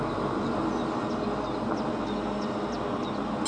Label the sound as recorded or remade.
recorded